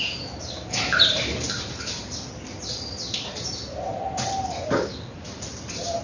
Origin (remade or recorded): recorded